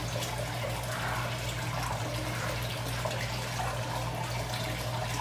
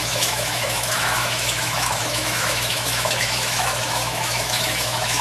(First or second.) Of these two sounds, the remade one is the second